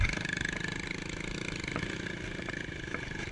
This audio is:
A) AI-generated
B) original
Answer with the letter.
B